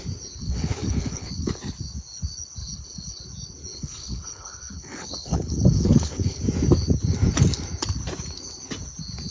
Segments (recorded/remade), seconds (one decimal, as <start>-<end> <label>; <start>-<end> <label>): 0.0-0.4 recorded; 0.4-1.6 remade; 1.6-2.6 recorded; 2.6-3.2 remade; 3.2-3.7 recorded; 3.7-6.4 remade; 6.4-9.3 recorded